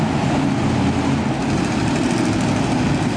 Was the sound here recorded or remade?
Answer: recorded